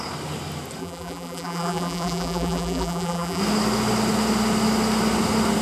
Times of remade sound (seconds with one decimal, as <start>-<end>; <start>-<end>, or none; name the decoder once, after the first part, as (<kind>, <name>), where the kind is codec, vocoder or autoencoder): 0.8-3.4 (vocoder, BigVGAN v2)